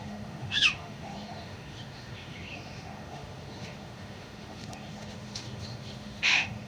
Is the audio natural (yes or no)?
no